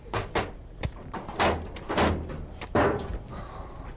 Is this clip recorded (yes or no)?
yes